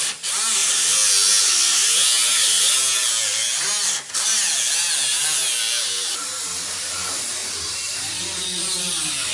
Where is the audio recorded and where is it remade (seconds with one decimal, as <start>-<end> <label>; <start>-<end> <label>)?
0.0-9.3 recorded